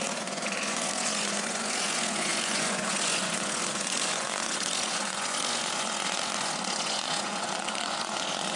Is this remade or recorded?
remade